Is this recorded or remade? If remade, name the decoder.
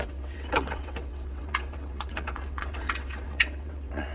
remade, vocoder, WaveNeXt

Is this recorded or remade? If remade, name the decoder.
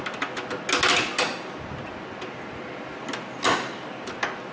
recorded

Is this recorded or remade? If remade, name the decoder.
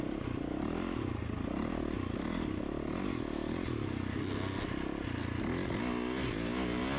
recorded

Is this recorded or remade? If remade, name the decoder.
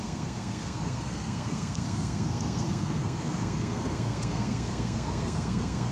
remade, codec, SNAC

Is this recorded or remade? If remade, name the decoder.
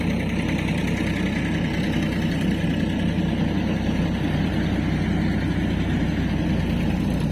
recorded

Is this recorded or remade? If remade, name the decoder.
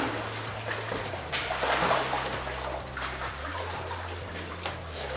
recorded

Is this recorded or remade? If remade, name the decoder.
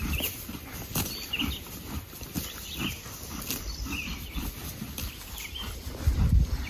recorded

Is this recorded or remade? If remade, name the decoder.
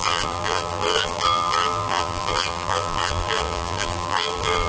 remade, vocoder, BigVGAN v2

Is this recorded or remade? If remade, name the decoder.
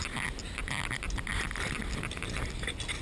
recorded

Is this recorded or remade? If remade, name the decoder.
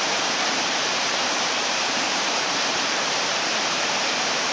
remade, vocoder, BigVGAN v2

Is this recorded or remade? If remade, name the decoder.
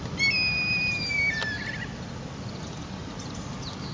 recorded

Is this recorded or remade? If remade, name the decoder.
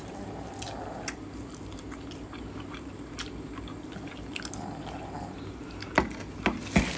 recorded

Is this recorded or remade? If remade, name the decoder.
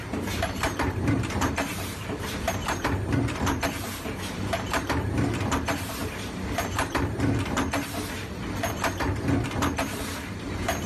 remade, vocoder, BigVGAN v2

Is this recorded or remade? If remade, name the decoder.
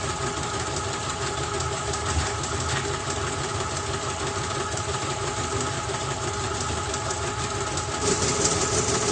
recorded